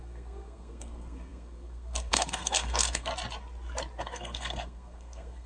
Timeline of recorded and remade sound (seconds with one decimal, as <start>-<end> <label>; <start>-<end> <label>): 0.0-3.1 remade; 3.1-4.0 recorded; 4.0-5.5 remade